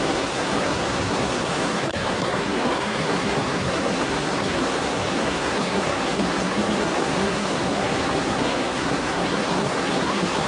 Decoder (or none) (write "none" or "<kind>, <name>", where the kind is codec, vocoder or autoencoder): codec, SNAC